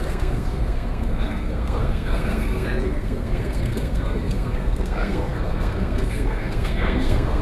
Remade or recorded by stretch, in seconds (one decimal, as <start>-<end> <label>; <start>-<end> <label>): 0.0-7.4 remade